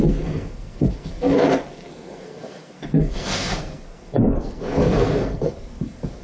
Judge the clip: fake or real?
fake